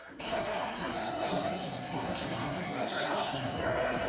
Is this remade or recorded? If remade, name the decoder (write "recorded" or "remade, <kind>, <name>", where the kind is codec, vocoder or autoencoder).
remade, codec, SNAC